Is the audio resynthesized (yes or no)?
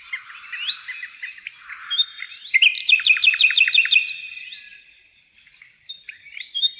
yes